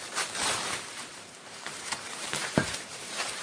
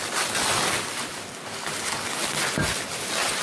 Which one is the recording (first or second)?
second